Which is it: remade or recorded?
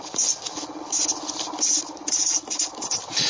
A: recorded